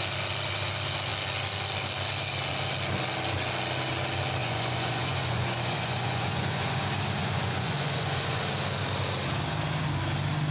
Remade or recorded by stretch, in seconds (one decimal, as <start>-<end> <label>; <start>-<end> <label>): 0.0-4.4 recorded; 4.4-6.8 remade; 6.8-7.2 recorded; 7.2-8.4 remade; 8.4-10.5 recorded